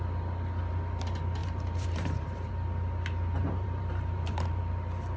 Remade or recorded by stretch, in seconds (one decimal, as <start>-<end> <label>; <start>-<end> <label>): 0.0-1.4 recorded; 1.4-2.5 remade; 2.5-3.4 recorded; 3.4-4.6 remade; 4.6-5.2 recorded